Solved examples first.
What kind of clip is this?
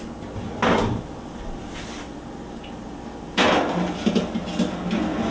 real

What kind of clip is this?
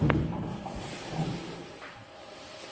real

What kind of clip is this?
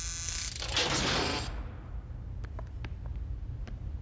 real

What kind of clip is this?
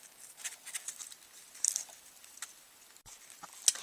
real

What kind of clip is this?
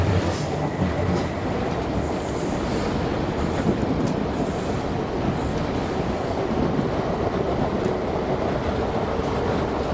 real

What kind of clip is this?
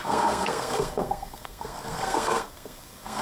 fake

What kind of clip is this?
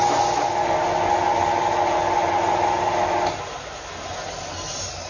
real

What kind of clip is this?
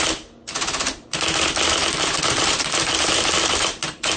real